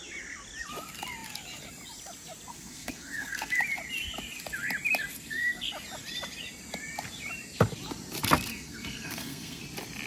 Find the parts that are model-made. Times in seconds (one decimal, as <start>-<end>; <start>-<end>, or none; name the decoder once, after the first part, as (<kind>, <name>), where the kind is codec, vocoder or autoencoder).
2.5-3.6 (codec, SNAC); 5.1-5.7; 8.5-9.6

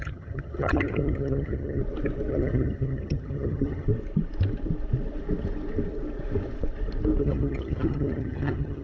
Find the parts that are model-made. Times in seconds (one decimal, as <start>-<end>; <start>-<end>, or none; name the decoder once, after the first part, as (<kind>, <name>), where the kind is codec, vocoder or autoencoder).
0.0-1.8 (vocoder, HiFi-GAN); 2.3-3.9; 7.2-8.8